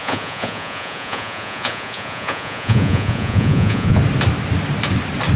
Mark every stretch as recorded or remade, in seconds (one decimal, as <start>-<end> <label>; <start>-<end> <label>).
0.0-4.0 remade; 4.0-5.4 recorded